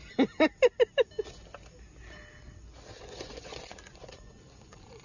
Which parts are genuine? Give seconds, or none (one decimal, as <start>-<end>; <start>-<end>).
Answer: 0.0-3.0

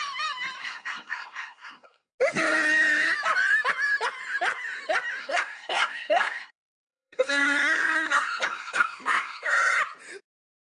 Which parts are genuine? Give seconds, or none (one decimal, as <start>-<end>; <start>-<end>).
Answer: 0.0-0.6; 2.1-5.2; 9.8-10.8

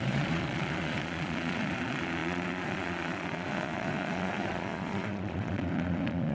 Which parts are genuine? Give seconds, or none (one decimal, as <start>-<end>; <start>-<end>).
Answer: none

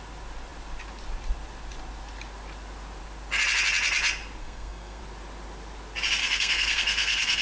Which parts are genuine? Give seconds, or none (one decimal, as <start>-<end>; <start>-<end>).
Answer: 0.0-4.4; 5.0-6.2

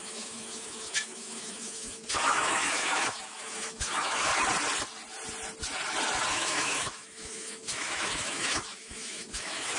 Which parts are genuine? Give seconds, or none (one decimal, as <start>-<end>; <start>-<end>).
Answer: 4.3-6.3

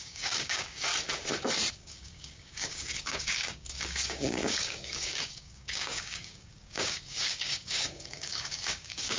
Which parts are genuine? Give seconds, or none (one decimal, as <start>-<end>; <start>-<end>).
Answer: 0.9-1.7

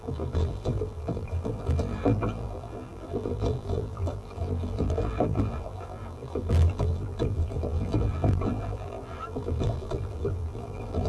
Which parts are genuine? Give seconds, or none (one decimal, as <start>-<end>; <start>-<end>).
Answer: none

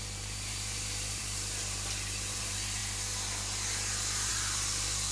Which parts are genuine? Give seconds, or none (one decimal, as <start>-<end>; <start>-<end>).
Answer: 2.8-4.3